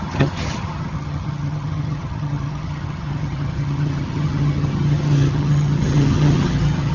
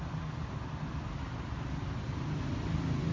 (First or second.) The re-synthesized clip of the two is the first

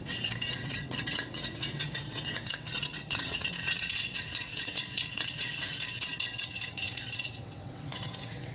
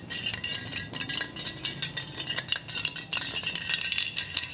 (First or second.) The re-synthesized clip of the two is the first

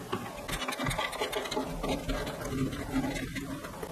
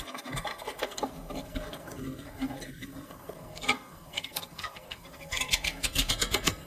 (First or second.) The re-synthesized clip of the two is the second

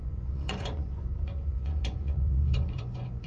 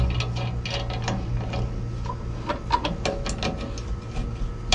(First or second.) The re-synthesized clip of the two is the first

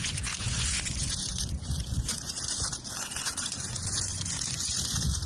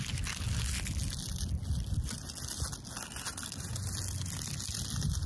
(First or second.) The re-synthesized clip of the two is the first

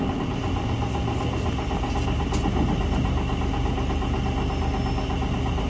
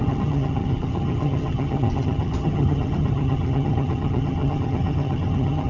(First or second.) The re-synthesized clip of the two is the second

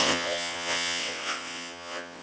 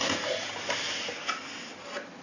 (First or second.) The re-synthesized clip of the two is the first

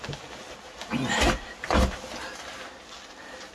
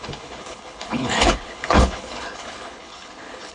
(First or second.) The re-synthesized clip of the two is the second